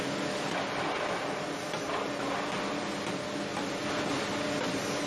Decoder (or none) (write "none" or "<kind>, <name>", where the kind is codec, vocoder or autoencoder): none